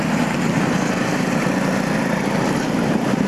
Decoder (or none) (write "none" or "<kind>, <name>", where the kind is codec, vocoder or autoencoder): none